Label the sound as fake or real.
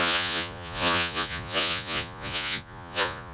fake